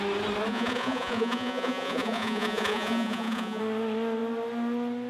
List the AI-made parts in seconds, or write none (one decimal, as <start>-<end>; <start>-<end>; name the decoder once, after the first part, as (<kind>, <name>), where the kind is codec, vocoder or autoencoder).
0.5-3.6 (vocoder, Vocos)